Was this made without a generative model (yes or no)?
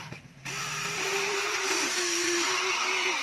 no